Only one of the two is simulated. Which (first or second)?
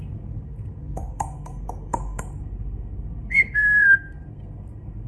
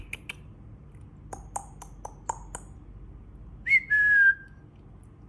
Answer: first